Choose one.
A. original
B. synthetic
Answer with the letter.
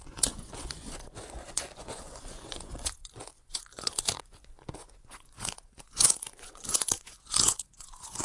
B